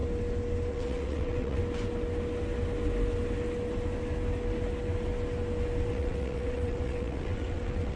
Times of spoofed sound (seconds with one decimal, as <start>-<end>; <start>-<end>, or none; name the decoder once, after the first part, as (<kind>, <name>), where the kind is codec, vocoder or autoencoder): 0.7-1.6 (vocoder, WaveNeXt); 5.9-8.0